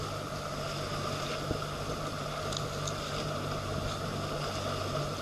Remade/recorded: recorded